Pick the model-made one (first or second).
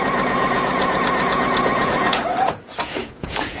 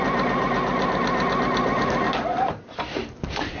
first